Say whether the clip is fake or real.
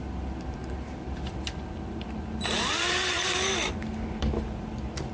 fake